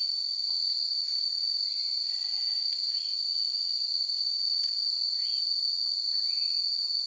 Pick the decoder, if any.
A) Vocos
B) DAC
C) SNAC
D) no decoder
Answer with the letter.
D